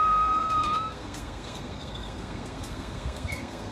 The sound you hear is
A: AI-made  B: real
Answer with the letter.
A